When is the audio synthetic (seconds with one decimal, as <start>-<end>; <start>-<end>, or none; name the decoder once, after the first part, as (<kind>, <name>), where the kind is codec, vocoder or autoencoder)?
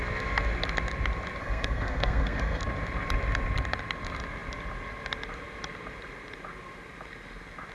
1.4-2.6 (codec, SNAC)